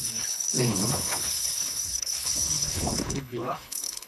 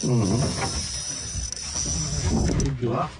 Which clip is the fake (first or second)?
first